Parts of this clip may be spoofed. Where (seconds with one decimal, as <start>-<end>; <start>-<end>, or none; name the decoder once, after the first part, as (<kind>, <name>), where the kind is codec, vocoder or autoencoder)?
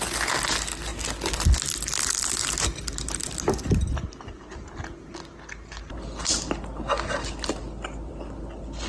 none